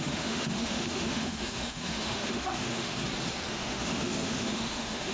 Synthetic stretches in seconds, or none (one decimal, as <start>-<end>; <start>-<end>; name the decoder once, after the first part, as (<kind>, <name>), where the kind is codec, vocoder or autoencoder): 0.0-3.0 (autoencoder, DAC-VAE); 3.5-5.1